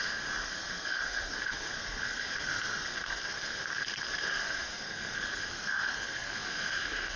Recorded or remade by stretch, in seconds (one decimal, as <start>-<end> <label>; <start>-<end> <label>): 0.0-7.2 remade